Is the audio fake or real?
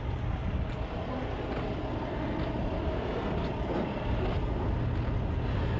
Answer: real